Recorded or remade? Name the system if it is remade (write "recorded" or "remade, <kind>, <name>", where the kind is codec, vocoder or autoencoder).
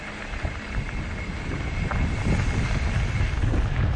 recorded